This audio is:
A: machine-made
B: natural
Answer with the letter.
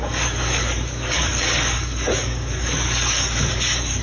A